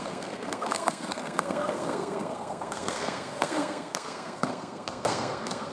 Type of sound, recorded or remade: remade